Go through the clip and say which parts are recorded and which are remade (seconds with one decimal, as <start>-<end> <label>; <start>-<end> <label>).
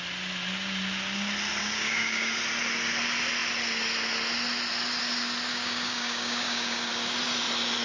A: 0.0-1.6 recorded; 1.6-2.4 remade; 2.4-5.5 recorded; 5.5-6.9 remade; 6.9-7.8 recorded